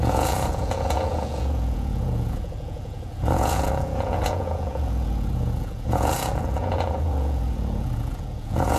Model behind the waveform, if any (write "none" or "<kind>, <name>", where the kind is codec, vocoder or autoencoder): vocoder, Vocos